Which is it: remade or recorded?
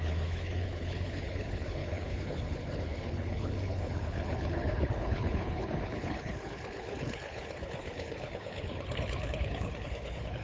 remade